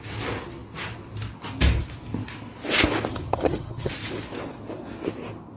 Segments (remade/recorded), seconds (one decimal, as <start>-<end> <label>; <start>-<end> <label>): 0.0-3.1 recorded; 3.1-3.9 remade; 3.9-5.6 recorded